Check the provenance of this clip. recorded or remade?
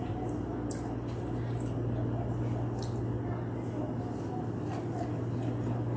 recorded